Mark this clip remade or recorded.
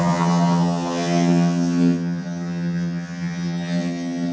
remade